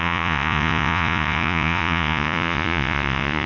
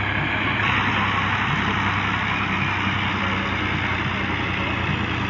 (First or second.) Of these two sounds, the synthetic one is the first